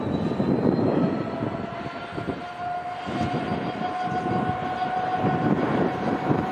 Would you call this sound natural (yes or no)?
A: yes